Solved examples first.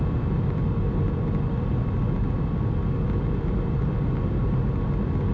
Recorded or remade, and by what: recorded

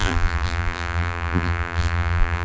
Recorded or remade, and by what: remade, vocoder, BigVGAN v2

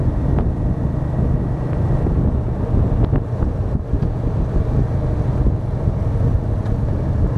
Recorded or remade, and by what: recorded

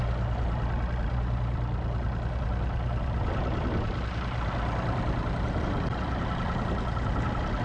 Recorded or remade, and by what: recorded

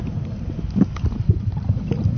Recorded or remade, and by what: remade, vocoder, BigVGAN v2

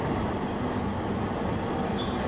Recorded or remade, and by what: recorded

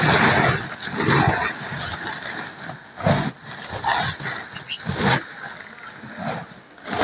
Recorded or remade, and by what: recorded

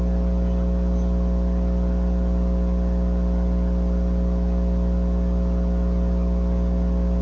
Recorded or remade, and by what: recorded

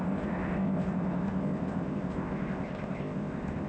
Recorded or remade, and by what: remade, codec, ZipCodec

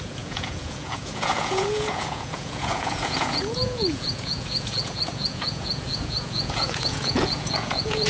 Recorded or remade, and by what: remade, vocoder, Vocos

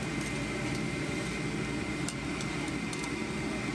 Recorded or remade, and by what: recorded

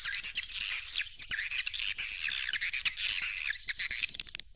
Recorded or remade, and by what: recorded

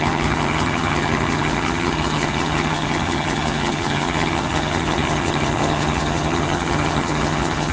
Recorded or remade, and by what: remade, vocoder, HiFi-GAN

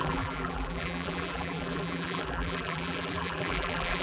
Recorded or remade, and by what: remade, vocoder, BigVGAN v2